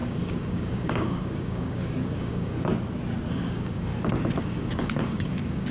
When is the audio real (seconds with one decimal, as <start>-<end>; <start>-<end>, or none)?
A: 2.7-3.3; 3.9-4.4